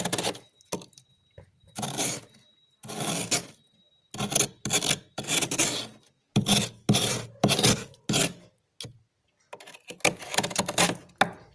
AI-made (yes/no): no